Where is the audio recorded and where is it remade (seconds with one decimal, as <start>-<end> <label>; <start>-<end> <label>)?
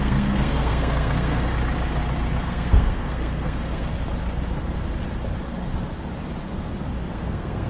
0.0-1.5 remade; 1.5-2.4 recorded; 2.4-3.9 remade; 3.9-7.1 recorded; 7.1-7.7 remade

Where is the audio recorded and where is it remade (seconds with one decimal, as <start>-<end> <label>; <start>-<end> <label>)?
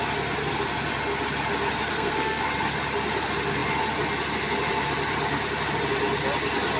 0.0-1.9 recorded; 1.9-2.4 remade; 2.4-6.8 recorded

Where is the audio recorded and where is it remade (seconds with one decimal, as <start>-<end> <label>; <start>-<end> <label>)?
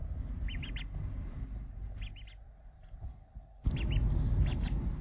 0.0-5.0 recorded